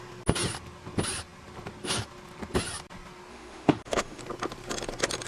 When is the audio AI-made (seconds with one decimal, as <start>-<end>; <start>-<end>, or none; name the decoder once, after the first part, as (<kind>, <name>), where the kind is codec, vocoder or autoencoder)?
3.3-4.2 (autoencoder, DAC-VAE)